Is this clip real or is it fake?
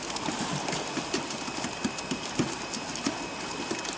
real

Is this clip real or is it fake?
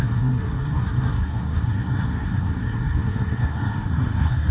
fake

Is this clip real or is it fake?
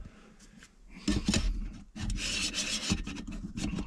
real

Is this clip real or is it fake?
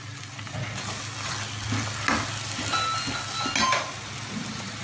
real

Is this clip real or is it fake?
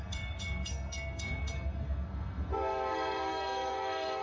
fake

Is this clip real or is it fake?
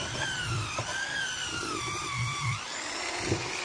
fake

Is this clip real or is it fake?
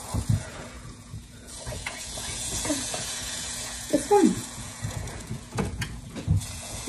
fake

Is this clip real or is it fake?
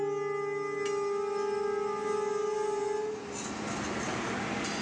real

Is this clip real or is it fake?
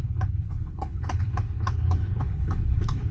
fake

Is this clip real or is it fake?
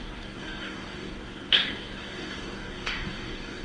fake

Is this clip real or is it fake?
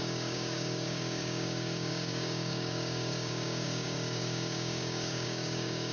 fake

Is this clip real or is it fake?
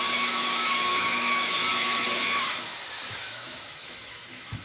fake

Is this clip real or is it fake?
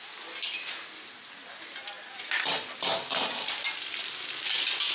real